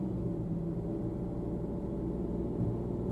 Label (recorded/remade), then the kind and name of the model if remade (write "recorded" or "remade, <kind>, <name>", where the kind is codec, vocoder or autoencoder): recorded